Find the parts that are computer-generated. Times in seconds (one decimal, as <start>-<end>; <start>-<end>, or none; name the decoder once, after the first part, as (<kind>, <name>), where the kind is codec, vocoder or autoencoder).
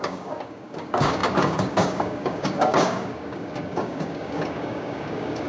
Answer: 0.0-5.5 (codec, DAC)